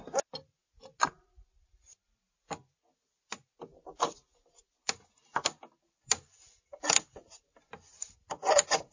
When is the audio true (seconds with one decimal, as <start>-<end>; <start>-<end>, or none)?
0.0-8.9